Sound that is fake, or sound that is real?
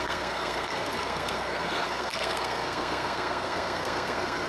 fake